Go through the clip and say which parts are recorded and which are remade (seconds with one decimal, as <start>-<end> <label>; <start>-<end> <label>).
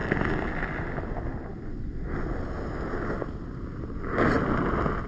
0.0-5.1 recorded